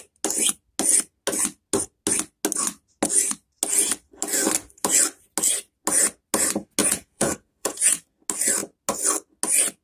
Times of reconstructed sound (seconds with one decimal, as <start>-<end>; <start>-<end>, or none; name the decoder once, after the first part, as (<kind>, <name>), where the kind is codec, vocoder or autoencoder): 6.8-8.0 (vocoder, Vocos)